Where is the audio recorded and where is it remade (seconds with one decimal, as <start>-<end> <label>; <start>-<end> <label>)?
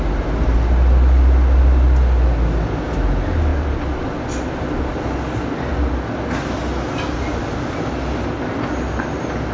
0.0-9.5 recorded